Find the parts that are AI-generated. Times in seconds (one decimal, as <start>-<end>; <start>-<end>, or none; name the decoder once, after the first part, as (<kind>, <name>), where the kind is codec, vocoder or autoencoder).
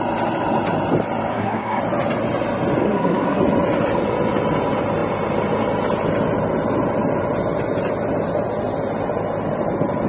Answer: 1.3-1.8 (codec, SNAC); 2.8-3.4